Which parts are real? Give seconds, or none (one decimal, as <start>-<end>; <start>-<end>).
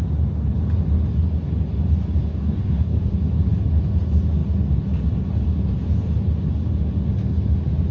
0.0-2.3; 3.1-7.9